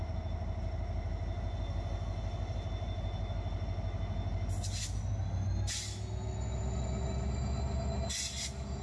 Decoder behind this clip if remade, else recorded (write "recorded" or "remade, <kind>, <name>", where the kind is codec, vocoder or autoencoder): recorded